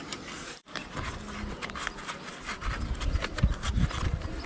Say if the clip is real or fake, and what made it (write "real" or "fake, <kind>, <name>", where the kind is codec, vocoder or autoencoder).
real